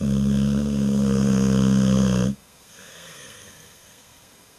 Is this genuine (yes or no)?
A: no